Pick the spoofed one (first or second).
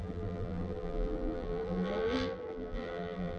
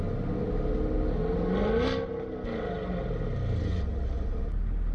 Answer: first